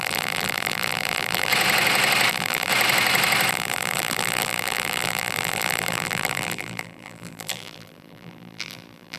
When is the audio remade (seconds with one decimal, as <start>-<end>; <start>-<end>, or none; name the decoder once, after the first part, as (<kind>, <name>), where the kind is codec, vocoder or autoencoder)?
0.0-1.5 (vocoder, BigVGAN v2); 2.3-2.7; 3.5-9.2